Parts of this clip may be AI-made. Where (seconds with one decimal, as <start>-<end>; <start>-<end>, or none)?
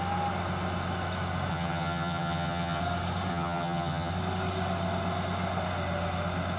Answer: 1.5-2.8; 3.3-4.1